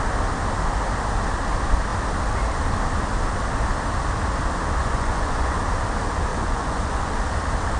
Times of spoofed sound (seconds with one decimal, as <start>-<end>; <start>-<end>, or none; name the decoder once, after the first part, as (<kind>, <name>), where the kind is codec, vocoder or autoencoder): 4.8-5.6 (vocoder, Vocos); 6.3-7.1